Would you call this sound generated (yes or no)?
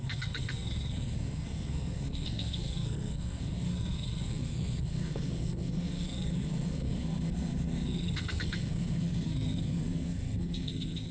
yes